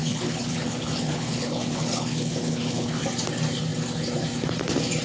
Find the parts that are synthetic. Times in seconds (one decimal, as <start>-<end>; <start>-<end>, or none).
0.0-3.0